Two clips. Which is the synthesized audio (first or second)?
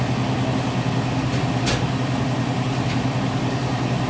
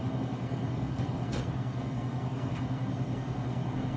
second